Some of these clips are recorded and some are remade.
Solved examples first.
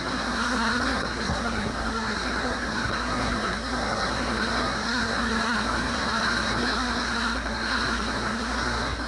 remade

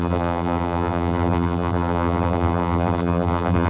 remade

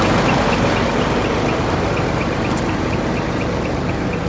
remade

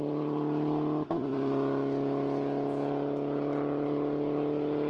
recorded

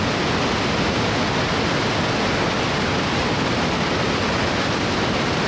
recorded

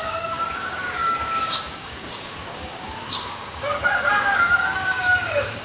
remade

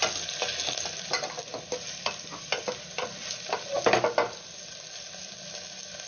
recorded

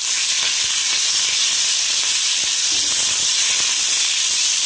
recorded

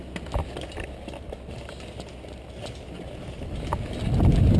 recorded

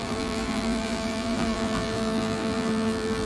remade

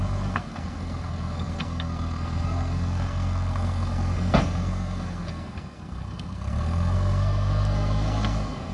remade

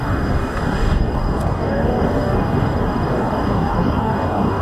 remade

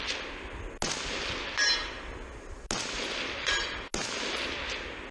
recorded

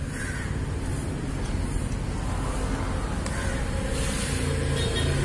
recorded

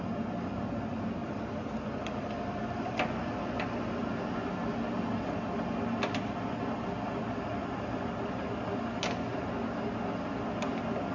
recorded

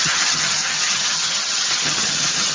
remade